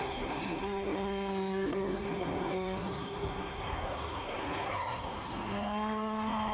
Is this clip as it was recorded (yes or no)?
no